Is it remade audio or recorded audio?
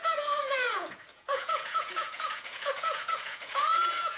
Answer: remade